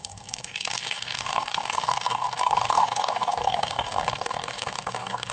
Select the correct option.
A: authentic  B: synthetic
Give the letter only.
B